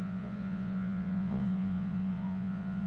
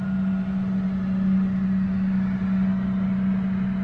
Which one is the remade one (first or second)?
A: first